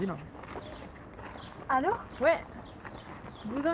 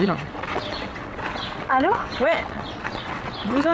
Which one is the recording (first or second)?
first